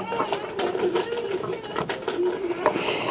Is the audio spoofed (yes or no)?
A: no